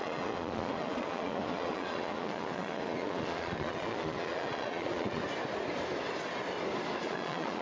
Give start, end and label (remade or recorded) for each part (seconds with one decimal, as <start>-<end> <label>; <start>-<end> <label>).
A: 0.0-5.2 remade; 5.2-7.0 recorded; 7.0-7.6 remade